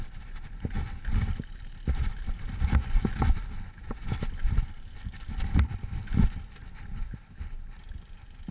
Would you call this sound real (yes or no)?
yes